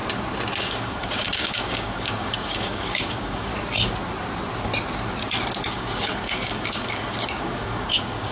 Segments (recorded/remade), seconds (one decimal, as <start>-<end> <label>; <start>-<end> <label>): 0.0-0.6 recorded; 0.6-3.5 remade; 3.5-5.7 recorded; 5.7-8.3 remade